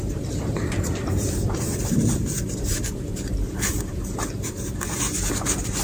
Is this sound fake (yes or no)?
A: yes